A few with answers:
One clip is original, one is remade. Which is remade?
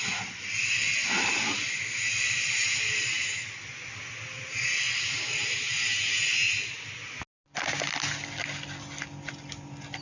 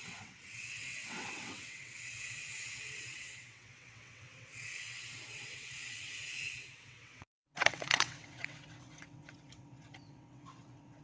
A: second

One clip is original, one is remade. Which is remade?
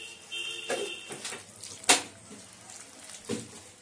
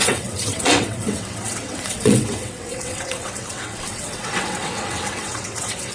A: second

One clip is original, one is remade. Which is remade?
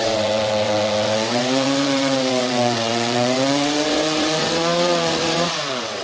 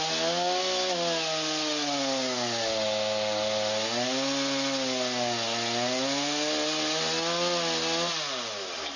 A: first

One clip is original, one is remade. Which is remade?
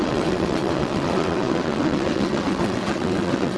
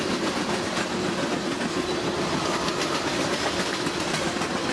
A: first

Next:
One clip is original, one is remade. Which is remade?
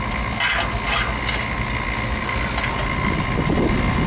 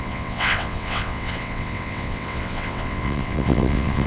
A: second